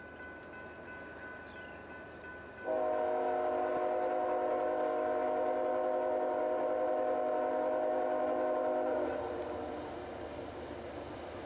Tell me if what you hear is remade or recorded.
recorded